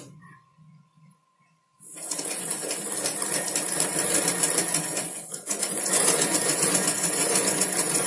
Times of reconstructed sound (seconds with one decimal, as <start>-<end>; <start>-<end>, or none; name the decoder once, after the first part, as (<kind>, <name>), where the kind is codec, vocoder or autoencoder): 0.0-2.6 (vocoder, Vocos); 4.8-8.1